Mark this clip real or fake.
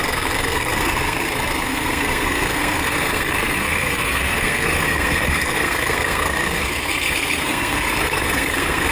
fake